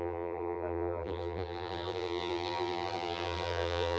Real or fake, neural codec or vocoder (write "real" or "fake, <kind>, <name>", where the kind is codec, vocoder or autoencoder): fake, vocoder, BigVGAN v2